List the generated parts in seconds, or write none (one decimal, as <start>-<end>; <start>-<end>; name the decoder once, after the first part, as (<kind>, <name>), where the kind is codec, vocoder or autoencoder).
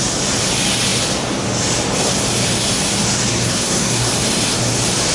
3.3-4.1 (codec, SNAC)